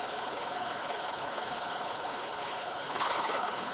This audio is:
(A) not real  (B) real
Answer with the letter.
A